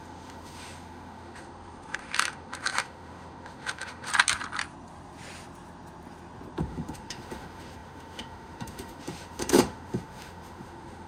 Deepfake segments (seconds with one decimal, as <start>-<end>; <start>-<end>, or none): 0.0-4.1; 6.6-11.1